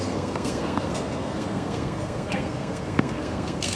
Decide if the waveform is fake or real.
fake